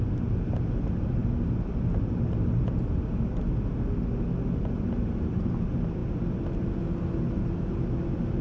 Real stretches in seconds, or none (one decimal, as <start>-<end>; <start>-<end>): 0.0-8.4